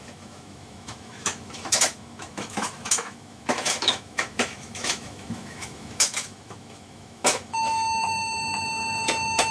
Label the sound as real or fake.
fake